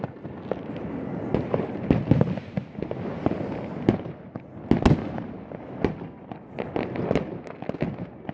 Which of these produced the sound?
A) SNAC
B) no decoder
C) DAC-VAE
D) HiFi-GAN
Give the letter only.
B